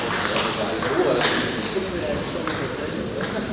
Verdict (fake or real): real